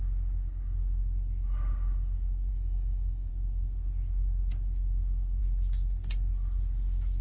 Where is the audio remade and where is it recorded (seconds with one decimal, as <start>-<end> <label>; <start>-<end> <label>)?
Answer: 0.0-2.5 recorded; 2.5-3.3 remade; 3.3-7.2 recorded